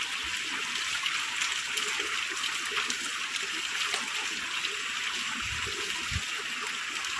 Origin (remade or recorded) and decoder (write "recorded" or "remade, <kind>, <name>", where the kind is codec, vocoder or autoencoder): recorded